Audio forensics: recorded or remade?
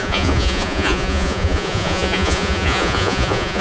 remade